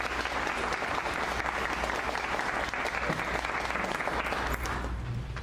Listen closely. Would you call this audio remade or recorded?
recorded